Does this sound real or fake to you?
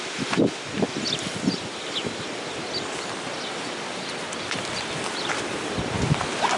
real